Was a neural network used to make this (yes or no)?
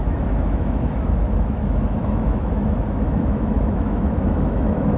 yes